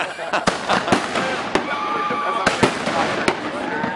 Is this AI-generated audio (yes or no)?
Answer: no